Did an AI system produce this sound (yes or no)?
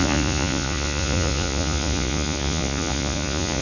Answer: yes